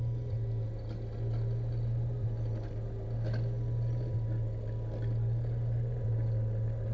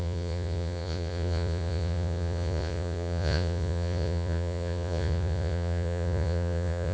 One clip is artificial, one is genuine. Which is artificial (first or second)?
second